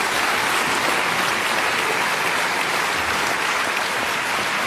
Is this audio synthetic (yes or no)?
no